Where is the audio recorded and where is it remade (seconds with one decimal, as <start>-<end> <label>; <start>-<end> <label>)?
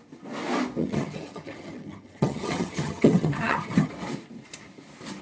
0.0-0.8 recorded; 0.8-3.9 remade; 3.9-5.2 recorded